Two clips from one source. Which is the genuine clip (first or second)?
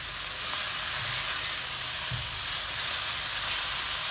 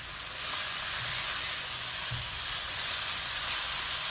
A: first